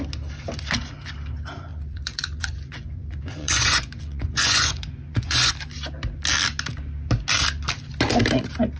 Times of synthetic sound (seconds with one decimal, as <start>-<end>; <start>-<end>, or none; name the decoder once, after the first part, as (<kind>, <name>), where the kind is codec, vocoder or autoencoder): 1.7-5.5 (vocoder, Vocos)